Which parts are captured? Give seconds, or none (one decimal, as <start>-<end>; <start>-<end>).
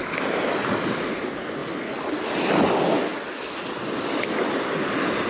0.0-5.3